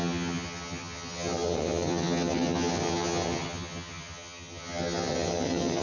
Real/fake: fake